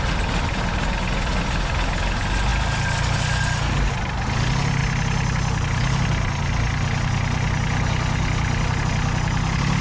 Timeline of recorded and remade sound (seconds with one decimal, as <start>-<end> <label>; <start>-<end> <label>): 0.0-9.8 recorded